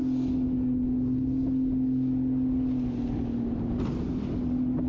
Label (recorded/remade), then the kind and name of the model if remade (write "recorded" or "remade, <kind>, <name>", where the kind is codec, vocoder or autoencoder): recorded